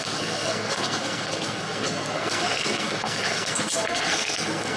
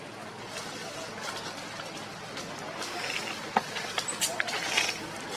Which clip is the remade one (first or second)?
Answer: first